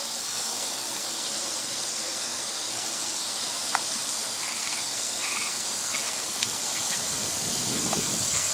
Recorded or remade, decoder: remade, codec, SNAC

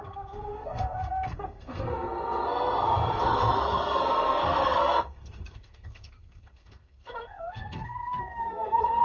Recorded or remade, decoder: remade, codec, SNAC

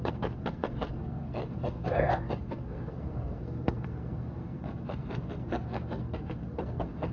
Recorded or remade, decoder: remade, codec, SNAC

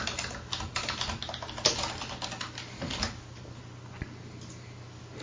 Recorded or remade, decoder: recorded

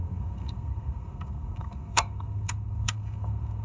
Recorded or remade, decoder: remade, codec, SNAC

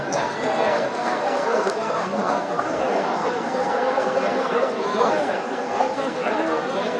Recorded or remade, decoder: remade, codec, SNAC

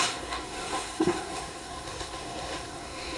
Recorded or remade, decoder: remade, codec, SNAC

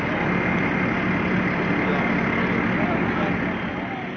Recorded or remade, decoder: recorded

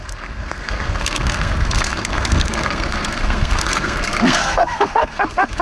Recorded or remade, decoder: remade, codec, SNAC